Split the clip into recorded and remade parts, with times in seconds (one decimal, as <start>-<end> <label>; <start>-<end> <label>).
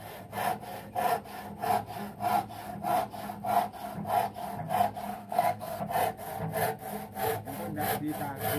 0.0-5.2 recorded; 5.2-5.8 remade; 5.8-8.6 recorded